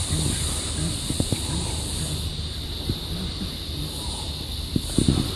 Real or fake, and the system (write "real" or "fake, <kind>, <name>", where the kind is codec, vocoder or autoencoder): real